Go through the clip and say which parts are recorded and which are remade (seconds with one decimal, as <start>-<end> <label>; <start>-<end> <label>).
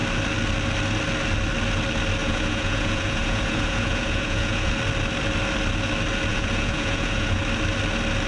0.0-2.2 recorded; 2.2-4.7 remade; 4.7-6.3 recorded; 6.3-7.4 remade; 7.4-8.3 recorded